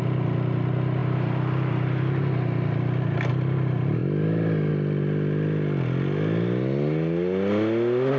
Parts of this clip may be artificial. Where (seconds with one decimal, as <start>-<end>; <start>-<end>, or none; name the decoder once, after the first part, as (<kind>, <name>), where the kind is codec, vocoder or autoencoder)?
none